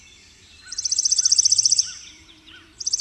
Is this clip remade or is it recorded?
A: remade